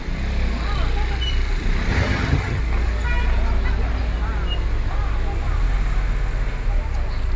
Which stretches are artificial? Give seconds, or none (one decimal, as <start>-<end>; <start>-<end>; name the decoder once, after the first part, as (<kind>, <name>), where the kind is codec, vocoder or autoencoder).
1.9-2.6 (vocoder, HiFi-GAN)